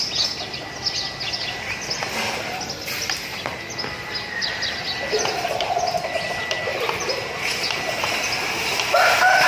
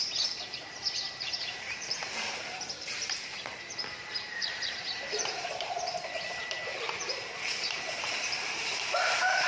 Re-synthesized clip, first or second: second